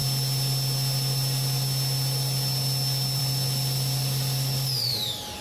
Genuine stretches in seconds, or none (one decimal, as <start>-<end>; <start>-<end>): 0.0-5.4